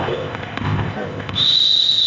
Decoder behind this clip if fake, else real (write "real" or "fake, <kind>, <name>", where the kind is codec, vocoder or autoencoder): fake, codec, ZipCodec